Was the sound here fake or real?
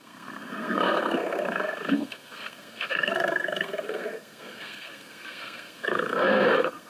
fake